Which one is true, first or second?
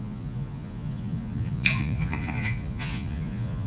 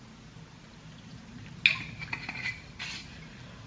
second